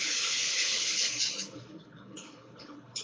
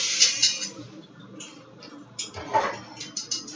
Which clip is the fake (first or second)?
first